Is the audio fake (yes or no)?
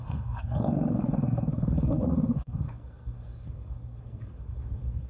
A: yes